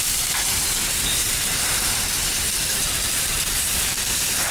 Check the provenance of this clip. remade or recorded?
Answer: remade